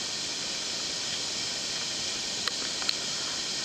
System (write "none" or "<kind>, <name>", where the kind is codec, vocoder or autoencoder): none